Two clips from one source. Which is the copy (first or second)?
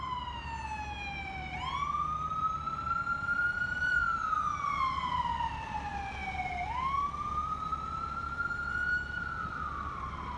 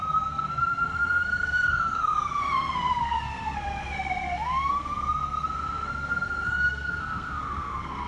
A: second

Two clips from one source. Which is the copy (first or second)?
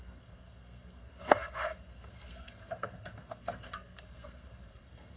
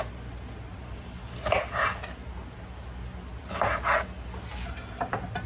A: first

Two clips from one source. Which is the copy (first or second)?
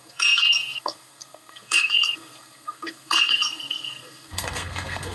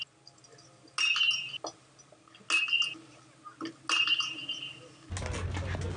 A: first